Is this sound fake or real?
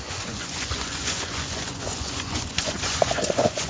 fake